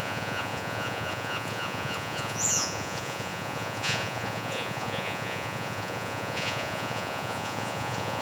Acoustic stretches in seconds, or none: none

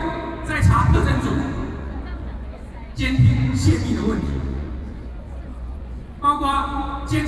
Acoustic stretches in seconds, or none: 0.0-0.6

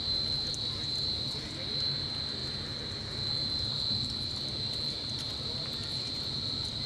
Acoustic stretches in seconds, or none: 0.0-6.9

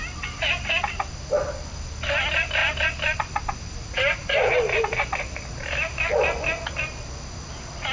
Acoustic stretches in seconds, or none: 0.0-7.9

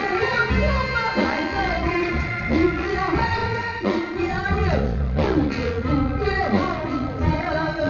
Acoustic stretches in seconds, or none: 0.4-1.2

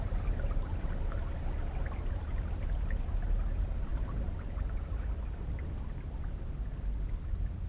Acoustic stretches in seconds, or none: 0.0-7.7

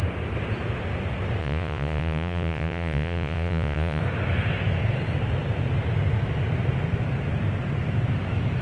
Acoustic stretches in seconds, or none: 0.0-1.4; 4.0-8.6